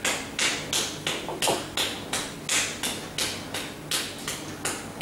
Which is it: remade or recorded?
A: recorded